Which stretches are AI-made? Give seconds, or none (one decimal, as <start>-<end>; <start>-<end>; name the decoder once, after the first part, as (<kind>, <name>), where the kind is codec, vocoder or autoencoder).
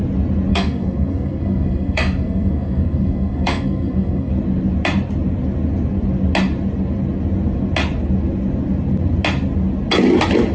0.5-4.3 (codec, SNAC)